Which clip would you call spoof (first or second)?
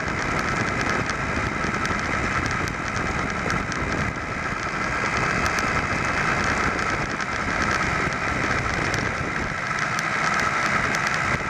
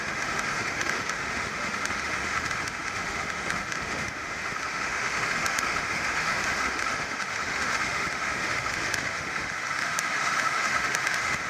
second